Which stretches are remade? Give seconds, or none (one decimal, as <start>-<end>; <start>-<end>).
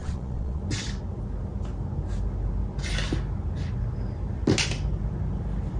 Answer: 0.0-0.6